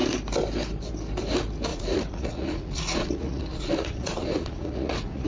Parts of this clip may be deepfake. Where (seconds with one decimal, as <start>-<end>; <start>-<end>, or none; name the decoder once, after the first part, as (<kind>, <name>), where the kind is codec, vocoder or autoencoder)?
1.7-5.3 (vocoder, Vocos)

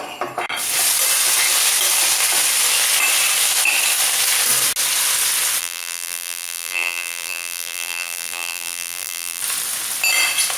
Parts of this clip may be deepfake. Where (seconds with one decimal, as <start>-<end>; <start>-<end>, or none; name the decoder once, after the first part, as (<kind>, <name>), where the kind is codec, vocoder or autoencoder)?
5.6-9.4 (vocoder, BigVGAN v2)